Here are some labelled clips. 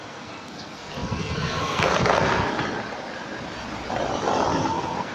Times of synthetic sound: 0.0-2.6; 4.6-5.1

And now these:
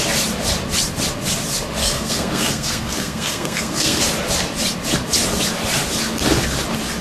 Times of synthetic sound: 1.8-4.0

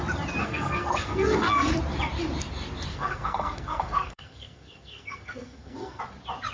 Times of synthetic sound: 0.4-1.7; 2.9-6.0

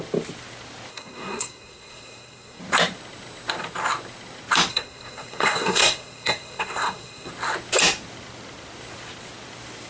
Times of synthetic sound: 0.9-2.6; 4.7-7.3

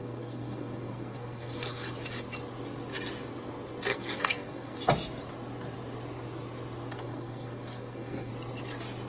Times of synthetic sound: 0.0-1.9; 3.9-4.8; 6.9-8.3